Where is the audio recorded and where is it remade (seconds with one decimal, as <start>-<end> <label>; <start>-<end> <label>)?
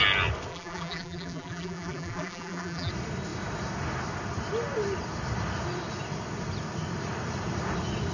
0.0-0.5 recorded; 0.5-2.9 remade; 2.9-8.1 recorded